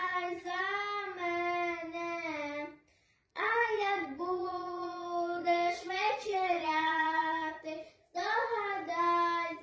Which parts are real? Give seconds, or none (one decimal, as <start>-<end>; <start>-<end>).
0.6-3.3; 7.6-9.6